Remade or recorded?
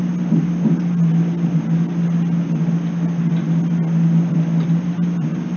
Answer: recorded